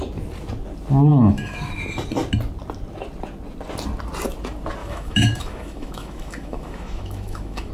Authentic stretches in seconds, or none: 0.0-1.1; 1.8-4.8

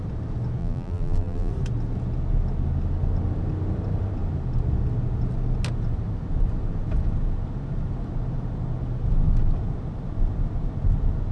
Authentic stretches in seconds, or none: 0.0-0.6; 1.5-11.3

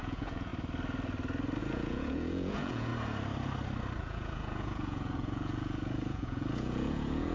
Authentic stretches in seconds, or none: 0.5-1.6; 2.9-4.0

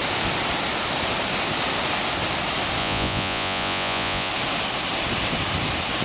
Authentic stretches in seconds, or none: 0.0-2.8; 4.3-6.0

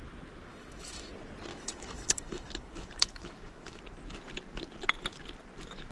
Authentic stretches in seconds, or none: 0.0-0.5; 1.1-1.5; 3.8-5.9

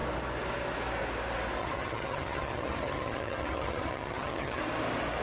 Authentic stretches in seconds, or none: 0.0-1.6; 4.6-5.2